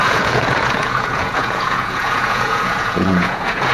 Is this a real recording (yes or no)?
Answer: no